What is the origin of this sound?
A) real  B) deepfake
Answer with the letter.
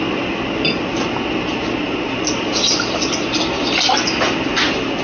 A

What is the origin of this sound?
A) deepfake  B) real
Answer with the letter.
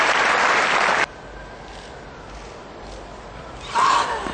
B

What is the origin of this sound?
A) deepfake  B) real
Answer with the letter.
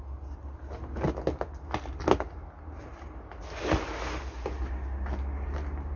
B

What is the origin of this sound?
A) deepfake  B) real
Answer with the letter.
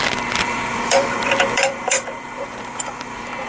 A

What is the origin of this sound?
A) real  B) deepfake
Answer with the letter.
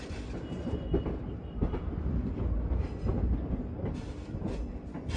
A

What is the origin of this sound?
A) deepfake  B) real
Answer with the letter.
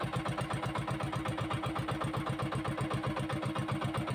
B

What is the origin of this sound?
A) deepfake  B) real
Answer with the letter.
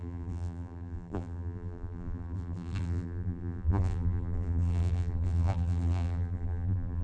A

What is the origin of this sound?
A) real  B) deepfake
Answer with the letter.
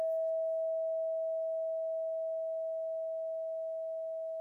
A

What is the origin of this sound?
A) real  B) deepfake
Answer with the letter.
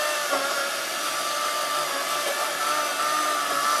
A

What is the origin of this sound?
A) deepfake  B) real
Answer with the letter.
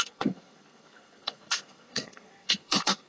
A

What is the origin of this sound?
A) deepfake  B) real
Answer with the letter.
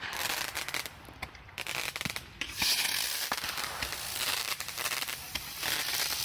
A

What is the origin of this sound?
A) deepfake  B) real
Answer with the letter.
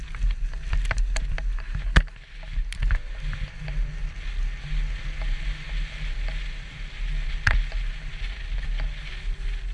B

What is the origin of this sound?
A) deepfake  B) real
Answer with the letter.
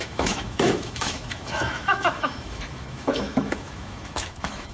A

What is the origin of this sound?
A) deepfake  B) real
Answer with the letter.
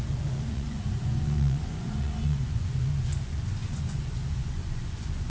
A